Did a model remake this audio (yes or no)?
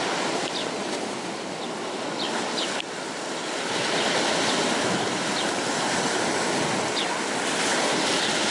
no